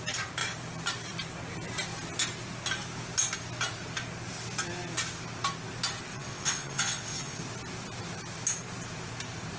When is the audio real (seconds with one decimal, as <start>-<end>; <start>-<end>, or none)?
0.0-6.1; 7.4-9.6